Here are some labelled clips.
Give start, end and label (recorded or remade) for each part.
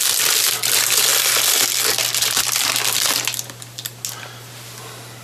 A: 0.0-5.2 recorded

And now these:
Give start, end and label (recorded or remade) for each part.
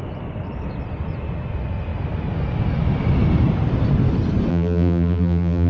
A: 0.0-4.5 recorded; 4.5-5.7 remade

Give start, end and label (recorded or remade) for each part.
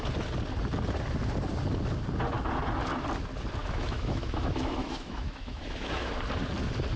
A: 0.0-3.6 recorded; 3.6-6.1 remade; 6.1-7.0 recorded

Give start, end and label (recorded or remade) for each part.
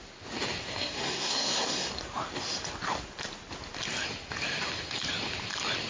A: 0.0-0.7 recorded; 0.7-1.9 remade; 1.9-5.9 recorded